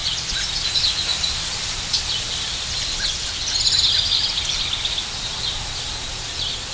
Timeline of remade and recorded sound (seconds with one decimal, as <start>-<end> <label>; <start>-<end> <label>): 0.0-6.7 recorded